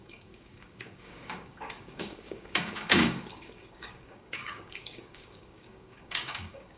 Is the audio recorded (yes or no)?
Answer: no